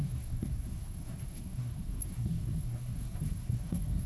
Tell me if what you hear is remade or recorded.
remade